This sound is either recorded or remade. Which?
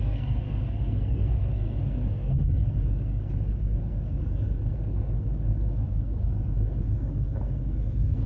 remade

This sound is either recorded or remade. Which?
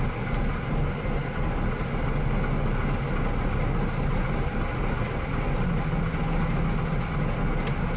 recorded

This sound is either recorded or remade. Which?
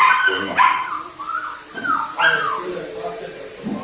remade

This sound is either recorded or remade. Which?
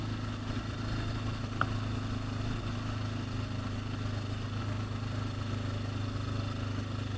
recorded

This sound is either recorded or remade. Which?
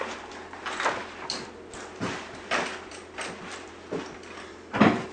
recorded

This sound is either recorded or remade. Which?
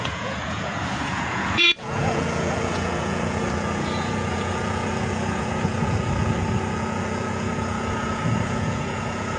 remade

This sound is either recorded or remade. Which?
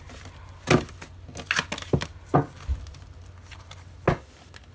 recorded